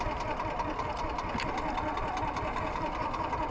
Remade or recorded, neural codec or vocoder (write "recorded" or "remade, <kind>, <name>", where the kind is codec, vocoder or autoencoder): recorded